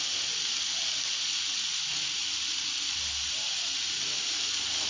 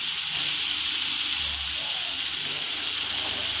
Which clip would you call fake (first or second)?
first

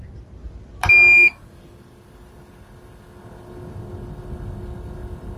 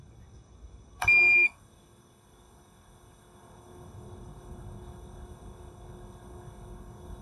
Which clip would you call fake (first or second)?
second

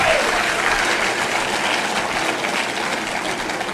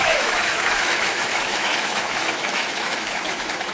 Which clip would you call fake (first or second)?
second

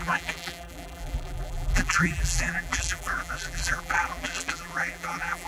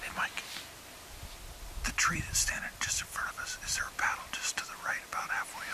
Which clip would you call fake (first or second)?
first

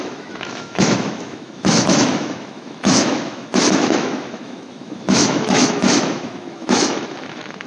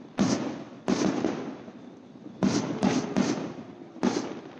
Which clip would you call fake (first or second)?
first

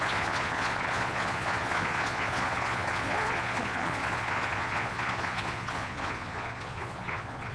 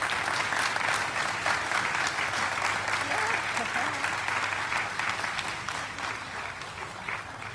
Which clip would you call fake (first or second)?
first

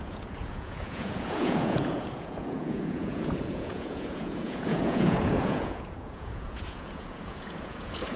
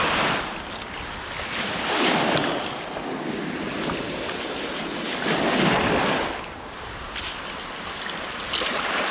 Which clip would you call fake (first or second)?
first